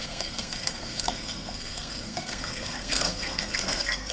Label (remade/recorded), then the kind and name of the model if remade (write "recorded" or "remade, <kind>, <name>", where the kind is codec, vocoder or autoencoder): remade, codec, SNAC